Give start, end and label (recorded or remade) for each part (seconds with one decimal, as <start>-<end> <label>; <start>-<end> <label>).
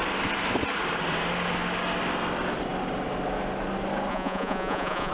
0.0-4.1 recorded; 4.1-5.1 remade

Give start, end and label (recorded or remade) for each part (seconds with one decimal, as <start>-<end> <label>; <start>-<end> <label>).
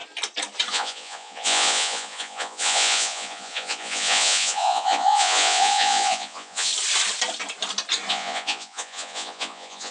0.0-0.7 recorded; 0.7-6.7 remade; 6.7-8.1 recorded; 8.1-9.9 remade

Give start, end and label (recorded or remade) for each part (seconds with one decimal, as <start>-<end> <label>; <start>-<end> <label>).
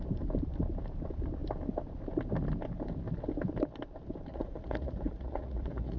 0.0-4.3 recorded; 4.3-6.0 remade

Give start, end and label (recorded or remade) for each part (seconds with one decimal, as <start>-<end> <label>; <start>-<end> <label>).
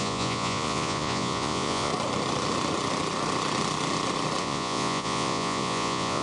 0.0-1.9 remade; 1.9-4.4 recorded; 4.4-6.2 remade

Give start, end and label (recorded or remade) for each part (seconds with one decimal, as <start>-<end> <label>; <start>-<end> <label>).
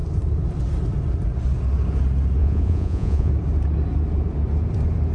0.0-2.4 recorded; 2.4-3.3 remade; 3.3-5.1 recorded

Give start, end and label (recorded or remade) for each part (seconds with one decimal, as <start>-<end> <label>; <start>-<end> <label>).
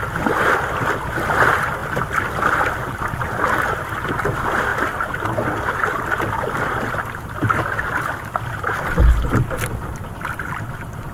0.0-11.1 recorded